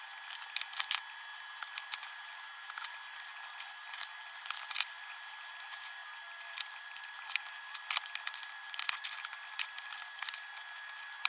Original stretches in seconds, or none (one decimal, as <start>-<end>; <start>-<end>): 0.0-3.3; 4.4-6.0; 10.0-11.3